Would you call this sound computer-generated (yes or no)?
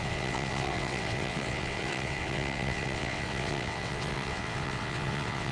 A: yes